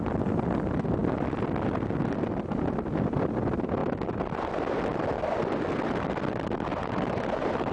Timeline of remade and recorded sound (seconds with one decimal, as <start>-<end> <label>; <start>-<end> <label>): 0.0-3.8 recorded; 3.8-4.5 remade; 4.5-6.7 recorded; 6.7-7.7 remade